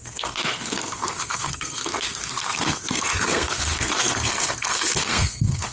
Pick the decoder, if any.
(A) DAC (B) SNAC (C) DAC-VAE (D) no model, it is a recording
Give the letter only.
B